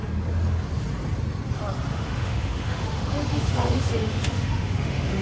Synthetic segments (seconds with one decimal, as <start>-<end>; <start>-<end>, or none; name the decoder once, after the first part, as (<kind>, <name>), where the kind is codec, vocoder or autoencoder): 1.9-5.2 (autoencoder, DAC-VAE)